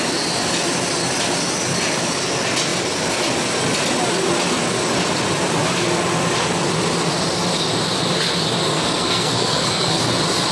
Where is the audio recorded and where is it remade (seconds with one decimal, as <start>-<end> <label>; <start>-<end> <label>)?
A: 0.0-8.7 recorded; 8.7-10.0 remade; 10.0-10.5 recorded